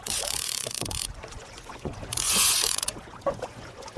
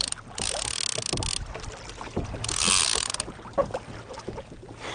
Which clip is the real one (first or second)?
second